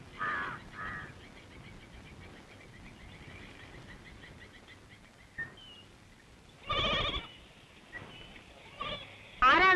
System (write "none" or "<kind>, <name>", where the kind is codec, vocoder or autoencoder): none